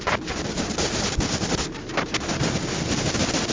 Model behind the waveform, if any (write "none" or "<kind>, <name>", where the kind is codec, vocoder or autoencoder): none